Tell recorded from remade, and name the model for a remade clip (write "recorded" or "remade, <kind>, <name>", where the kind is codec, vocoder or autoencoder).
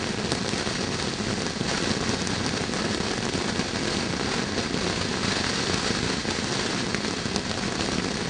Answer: recorded